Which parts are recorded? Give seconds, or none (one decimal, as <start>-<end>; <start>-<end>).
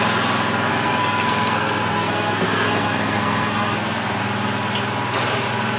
0.0-0.7; 4.2-5.8